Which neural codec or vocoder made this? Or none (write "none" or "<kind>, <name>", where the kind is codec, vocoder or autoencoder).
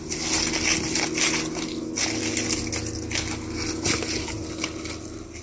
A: none